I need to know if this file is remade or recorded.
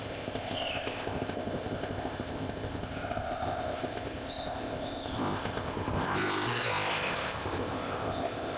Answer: remade